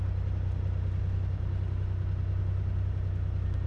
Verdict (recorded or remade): recorded